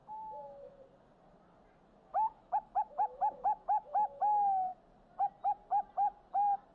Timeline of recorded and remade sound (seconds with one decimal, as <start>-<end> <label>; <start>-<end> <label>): 0.0-0.7 remade; 0.7-2.0 recorded; 2.0-4.8 remade; 4.8-6.7 recorded